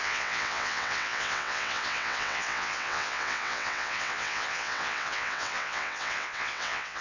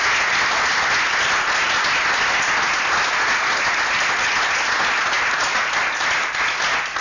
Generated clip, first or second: first